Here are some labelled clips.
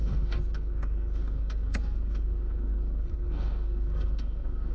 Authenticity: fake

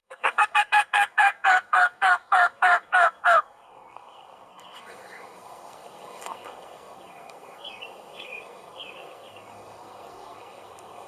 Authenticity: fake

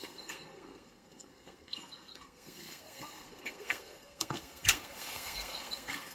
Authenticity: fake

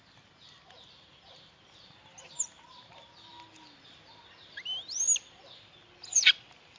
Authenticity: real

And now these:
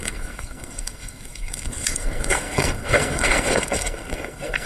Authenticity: fake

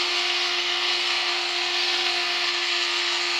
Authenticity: fake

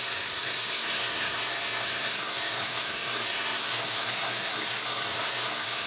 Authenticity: fake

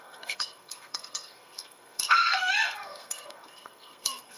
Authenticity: fake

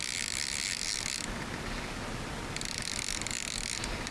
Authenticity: real